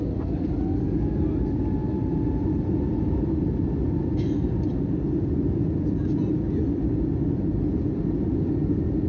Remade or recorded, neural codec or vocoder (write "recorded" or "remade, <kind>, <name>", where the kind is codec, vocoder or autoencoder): recorded